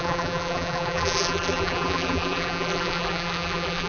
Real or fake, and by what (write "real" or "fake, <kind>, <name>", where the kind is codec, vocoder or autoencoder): fake, vocoder, BigVGAN v2